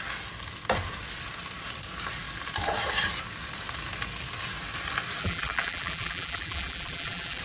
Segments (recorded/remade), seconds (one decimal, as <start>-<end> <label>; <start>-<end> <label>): 0.0-5.2 recorded; 5.2-7.4 remade